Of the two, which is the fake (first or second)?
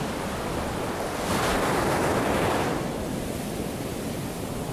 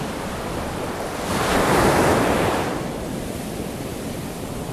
second